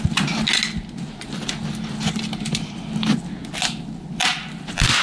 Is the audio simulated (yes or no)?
no